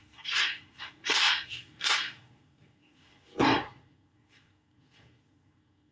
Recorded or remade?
remade